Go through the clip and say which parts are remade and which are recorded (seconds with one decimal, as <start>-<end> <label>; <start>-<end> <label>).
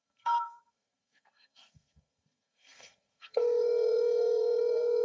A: 0.0-5.0 remade